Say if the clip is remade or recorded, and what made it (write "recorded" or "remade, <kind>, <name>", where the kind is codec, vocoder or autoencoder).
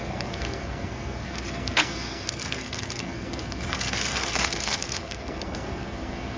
remade, codec, SNAC